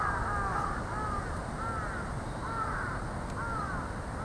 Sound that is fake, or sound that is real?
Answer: real